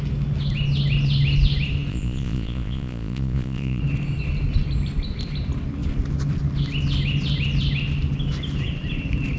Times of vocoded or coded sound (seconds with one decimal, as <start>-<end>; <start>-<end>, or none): 1.9-3.8